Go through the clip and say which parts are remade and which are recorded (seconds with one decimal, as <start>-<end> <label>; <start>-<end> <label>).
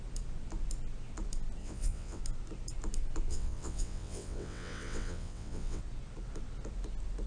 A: 0.0-1.6 recorded; 1.6-2.2 remade; 2.2-3.3 recorded; 3.3-5.8 remade; 5.8-7.3 recorded